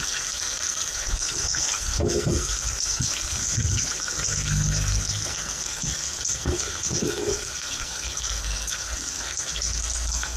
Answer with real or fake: fake